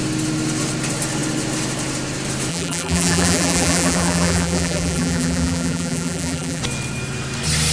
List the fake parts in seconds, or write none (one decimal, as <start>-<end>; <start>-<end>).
2.5-6.6